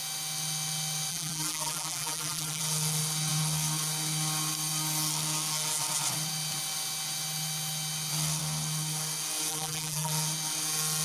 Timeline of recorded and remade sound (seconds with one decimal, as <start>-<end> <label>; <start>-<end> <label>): 0.0-1.1 recorded; 1.1-2.6 remade; 2.6-9.5 recorded; 9.5-10.1 remade; 10.1-11.0 recorded